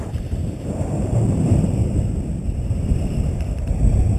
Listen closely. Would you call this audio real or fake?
fake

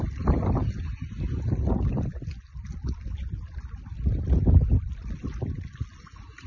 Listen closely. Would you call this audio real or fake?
real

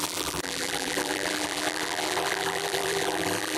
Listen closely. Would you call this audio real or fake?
fake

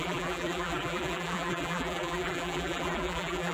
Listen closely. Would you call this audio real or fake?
fake